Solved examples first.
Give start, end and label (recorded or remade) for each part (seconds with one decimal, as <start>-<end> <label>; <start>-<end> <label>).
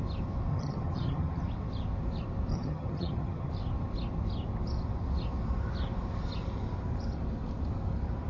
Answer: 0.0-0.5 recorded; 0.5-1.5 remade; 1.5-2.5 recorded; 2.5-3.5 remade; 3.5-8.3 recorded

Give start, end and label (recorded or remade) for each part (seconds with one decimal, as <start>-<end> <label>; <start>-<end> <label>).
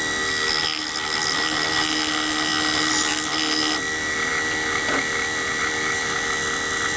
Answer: 0.0-7.0 recorded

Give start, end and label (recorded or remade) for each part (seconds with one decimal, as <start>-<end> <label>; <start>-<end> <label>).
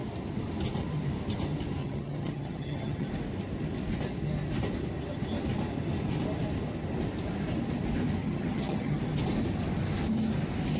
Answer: 0.0-1.8 recorded; 1.8-3.1 remade; 3.1-8.2 recorded; 8.2-9.0 remade; 9.0-10.8 recorded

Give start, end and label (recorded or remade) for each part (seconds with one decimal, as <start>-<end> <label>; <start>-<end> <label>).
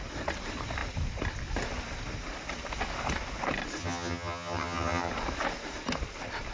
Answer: 0.0-3.8 recorded; 3.8-5.1 remade; 5.1-6.5 recorded